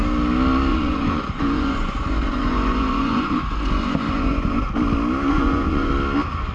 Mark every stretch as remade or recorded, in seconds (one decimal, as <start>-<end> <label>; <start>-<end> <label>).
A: 0.0-0.7 recorded; 0.7-4.6 remade; 4.6-5.3 recorded; 5.3-5.9 remade; 5.9-6.5 recorded